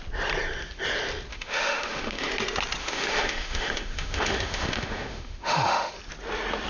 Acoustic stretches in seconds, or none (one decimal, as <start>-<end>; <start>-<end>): 0.0-1.3; 2.3-2.8; 5.9-6.7